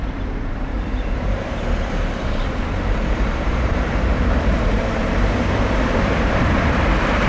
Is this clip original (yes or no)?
no